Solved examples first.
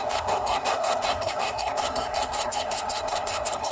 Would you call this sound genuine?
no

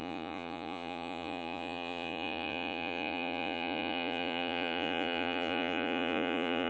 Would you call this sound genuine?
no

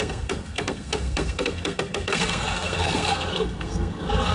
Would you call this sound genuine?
no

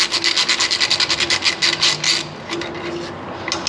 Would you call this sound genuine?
yes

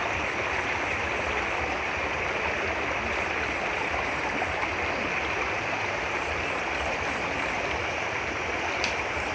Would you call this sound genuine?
yes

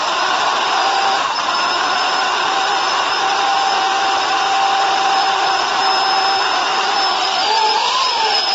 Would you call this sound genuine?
yes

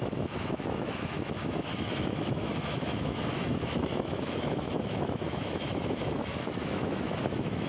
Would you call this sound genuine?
no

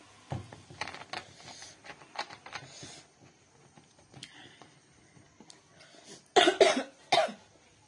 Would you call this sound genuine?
yes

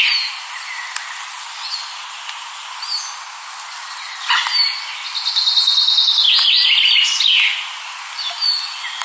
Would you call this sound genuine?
yes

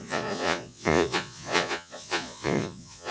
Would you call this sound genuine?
no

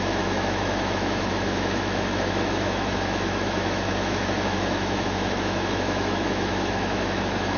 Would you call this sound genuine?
no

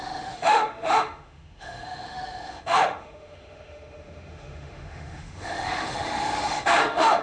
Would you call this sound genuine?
no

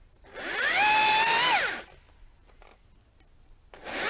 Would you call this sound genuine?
yes